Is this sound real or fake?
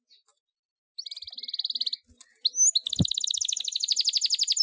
real